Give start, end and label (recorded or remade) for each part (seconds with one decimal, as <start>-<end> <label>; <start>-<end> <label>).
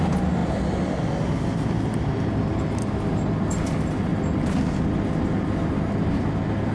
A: 0.0-6.7 recorded